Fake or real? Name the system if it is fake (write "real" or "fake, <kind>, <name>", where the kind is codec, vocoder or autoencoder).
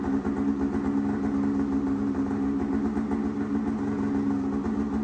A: real